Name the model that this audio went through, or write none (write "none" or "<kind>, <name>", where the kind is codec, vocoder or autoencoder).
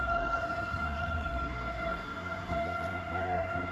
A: codec, SNAC